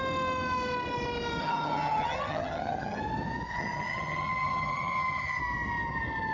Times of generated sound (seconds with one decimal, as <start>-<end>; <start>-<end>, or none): 1.4-3.0; 3.5-5.4